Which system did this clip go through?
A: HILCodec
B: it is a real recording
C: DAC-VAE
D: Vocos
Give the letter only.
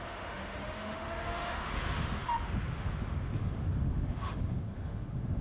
C